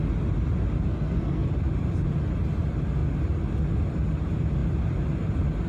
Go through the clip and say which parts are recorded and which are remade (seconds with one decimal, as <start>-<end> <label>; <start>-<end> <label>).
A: 0.0-0.9 recorded; 0.9-1.5 remade; 1.5-5.7 recorded